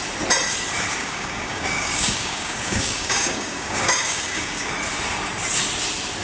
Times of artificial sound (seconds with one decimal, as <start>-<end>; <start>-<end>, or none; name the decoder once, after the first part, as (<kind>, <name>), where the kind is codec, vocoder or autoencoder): 1.0-4.7 (codec, DAC)

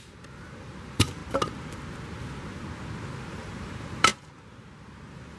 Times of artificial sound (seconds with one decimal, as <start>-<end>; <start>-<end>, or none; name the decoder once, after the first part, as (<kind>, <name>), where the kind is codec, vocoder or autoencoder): 0.0-1.2 (vocoder, BigVGAN v2); 3.3-4.1

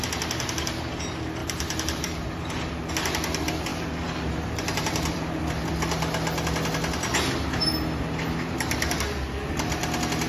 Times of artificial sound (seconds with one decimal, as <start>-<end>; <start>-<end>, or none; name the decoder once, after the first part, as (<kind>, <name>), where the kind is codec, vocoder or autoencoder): 1.4-2.9 (vocoder, BigVGAN v2); 3.7-5.4

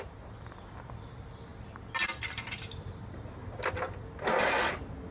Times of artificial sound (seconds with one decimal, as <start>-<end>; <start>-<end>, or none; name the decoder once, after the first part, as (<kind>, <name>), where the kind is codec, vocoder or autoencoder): none

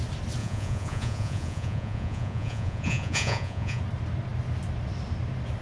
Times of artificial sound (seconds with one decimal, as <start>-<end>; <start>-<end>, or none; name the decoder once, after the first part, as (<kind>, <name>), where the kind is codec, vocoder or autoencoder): 0.4-3.8 (vocoder, Vocos)